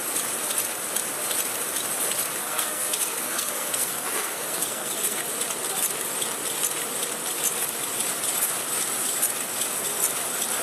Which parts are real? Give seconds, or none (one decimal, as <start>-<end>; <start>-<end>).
0.0-2.4; 5.2-10.6